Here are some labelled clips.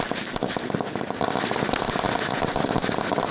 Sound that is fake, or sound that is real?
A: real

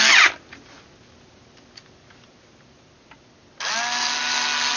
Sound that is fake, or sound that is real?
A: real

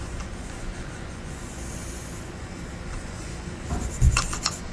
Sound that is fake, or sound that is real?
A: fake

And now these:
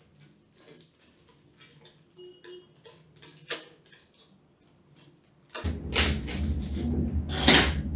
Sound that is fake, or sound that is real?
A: real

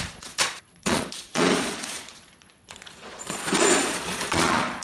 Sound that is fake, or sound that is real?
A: fake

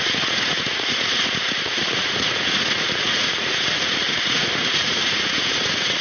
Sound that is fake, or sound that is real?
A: fake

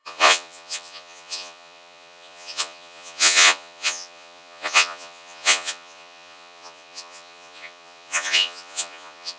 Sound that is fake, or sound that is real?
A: fake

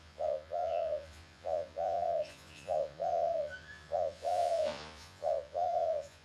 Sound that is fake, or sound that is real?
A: fake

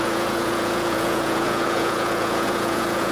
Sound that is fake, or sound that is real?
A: fake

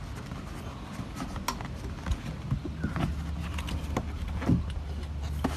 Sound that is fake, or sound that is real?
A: real